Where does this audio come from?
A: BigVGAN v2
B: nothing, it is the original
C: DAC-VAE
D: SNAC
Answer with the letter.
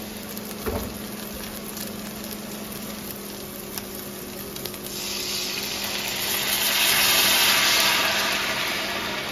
B